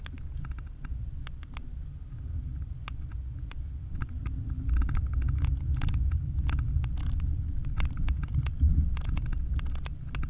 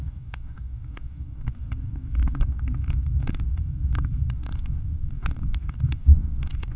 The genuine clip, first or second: first